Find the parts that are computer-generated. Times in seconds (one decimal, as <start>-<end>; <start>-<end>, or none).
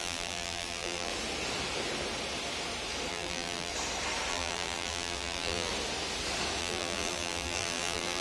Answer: 0.0-1.1; 3.1-3.7; 4.3-5.7; 6.6-8.2